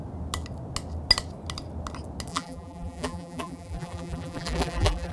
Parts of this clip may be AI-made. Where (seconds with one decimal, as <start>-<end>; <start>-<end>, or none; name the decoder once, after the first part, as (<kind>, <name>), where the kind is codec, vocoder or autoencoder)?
2.3-5.1 (vocoder, BigVGAN v2)